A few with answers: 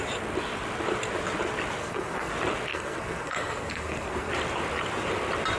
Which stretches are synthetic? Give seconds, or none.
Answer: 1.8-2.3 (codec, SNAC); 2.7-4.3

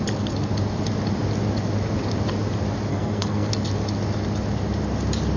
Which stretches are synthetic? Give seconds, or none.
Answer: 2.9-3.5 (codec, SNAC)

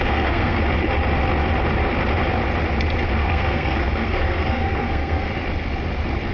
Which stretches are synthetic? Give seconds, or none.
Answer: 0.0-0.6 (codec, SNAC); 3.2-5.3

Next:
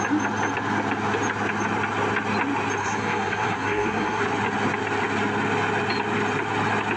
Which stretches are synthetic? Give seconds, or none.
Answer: 2.8-4.2 (codec, SNAC)

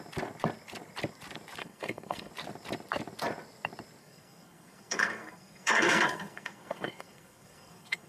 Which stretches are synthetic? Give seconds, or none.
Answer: 1.6-2.3 (codec, SNAC); 4.0-8.1

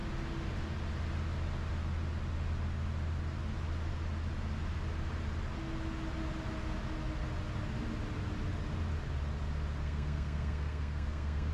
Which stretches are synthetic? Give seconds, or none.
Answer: 9.8-11.5 (codec, SNAC)

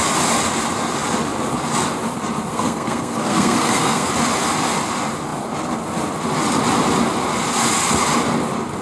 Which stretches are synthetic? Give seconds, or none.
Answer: 2.5-4.1 (codec, SNAC)

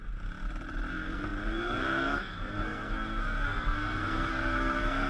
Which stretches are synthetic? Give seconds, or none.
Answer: 0.9-5.1 (codec, SNAC)